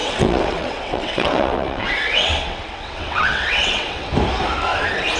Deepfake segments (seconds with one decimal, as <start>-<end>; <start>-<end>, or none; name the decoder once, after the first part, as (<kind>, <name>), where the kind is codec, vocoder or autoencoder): 0.0-4.1 (vocoder, WaveNeXt)